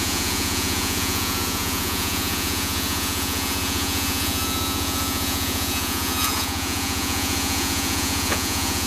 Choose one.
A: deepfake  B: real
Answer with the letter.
A